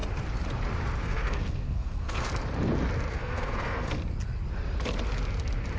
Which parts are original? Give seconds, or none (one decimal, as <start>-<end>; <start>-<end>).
0.0-1.0; 2.3-3.1; 4.0-5.8